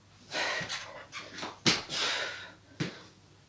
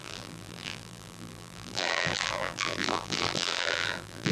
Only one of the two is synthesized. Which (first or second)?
second